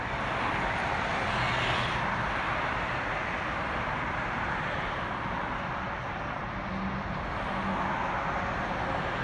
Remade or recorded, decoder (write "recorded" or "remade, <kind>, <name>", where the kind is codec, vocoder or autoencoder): recorded